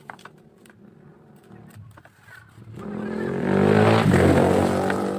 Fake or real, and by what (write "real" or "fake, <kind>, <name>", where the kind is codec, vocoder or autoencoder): real